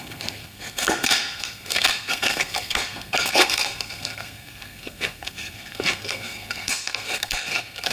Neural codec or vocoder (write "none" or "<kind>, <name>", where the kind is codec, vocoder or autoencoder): codec, SNAC